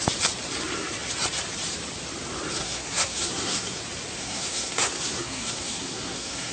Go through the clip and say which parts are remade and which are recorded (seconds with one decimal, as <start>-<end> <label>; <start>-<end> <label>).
0.0-2.6 recorded; 2.6-3.8 remade; 3.8-4.2 recorded; 4.2-6.5 remade